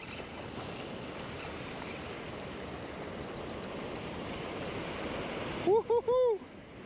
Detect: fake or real real